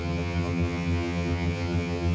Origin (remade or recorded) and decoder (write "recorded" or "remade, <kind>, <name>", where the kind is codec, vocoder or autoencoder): remade, vocoder, HiFi-GAN